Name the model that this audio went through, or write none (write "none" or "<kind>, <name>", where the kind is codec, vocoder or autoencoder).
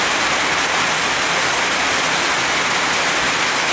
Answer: none